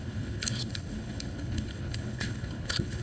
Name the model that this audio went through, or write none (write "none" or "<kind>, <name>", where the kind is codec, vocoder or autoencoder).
codec, HILCodec